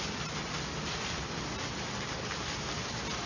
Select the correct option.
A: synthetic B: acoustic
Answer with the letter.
B